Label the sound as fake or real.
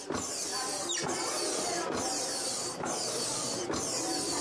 real